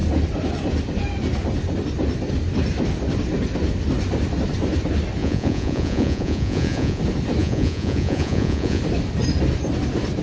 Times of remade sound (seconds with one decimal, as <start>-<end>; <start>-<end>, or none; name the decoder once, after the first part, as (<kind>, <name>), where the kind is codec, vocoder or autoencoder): 5.2-7.0 (vocoder, Vocos); 7.4-8.8